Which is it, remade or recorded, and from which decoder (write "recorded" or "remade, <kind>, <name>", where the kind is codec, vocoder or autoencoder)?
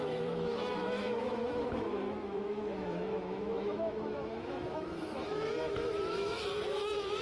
remade, autoencoder, DAC-VAE